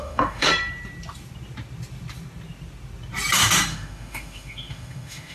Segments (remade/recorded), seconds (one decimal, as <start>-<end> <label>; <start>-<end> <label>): 0.0-0.5 remade; 0.5-3.7 recorded; 3.7-5.3 remade